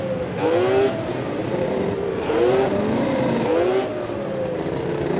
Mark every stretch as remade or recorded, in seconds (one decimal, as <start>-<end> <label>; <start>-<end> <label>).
0.0-1.4 recorded; 1.4-2.7 remade; 2.7-5.2 recorded